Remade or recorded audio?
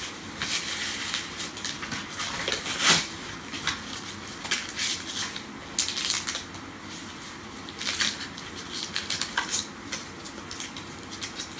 recorded